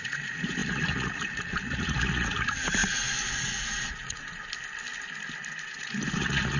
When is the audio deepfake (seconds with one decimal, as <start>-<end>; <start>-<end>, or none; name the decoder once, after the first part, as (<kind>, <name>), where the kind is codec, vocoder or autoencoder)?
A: 0.0-4.4 (vocoder, Vocos); 5.6-6.6